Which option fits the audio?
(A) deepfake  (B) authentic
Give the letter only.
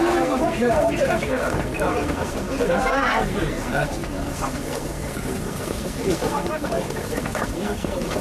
A